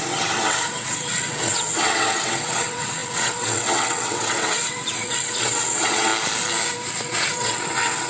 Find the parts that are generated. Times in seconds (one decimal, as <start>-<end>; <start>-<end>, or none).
0.0-6.1; 6.9-8.1